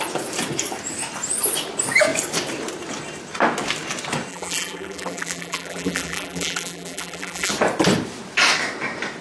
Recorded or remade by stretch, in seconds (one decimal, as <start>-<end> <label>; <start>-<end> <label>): 0.0-4.3 recorded; 4.3-7.5 remade; 7.5-9.2 recorded